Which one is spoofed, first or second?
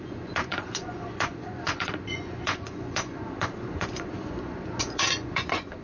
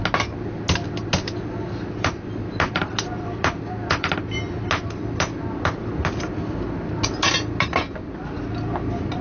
first